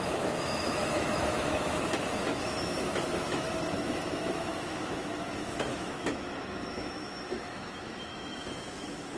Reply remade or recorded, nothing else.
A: remade